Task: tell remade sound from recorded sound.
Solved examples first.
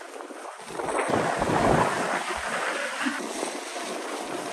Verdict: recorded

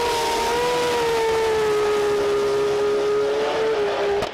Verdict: remade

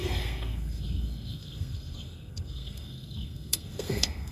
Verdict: remade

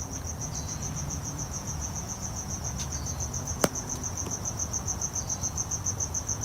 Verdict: remade